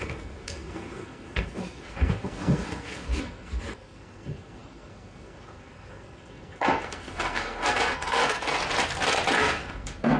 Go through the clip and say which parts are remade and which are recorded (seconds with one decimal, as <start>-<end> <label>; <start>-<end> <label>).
0.0-8.6 remade; 8.6-9.4 recorded; 9.4-10.2 remade